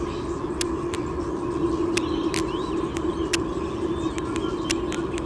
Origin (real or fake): real